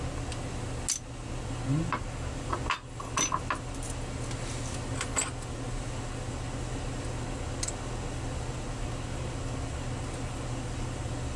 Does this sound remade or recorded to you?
recorded